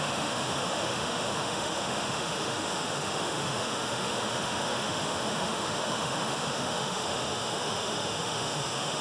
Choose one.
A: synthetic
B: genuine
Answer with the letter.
A